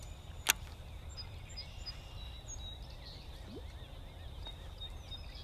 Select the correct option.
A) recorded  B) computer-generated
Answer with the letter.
A